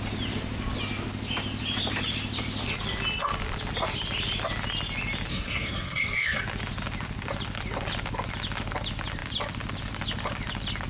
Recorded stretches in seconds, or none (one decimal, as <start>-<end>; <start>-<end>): 0.0-5.3; 6.4-10.9